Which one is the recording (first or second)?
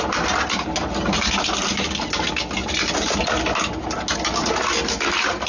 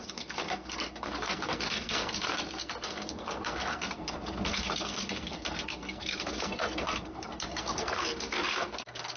first